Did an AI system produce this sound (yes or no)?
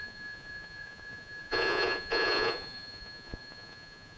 yes